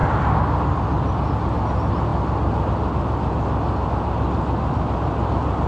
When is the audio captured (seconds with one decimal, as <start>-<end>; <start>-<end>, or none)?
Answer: 0.0-5.7